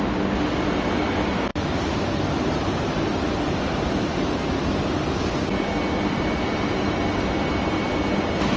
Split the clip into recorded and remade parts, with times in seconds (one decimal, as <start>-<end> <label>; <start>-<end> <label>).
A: 0.0-8.6 recorded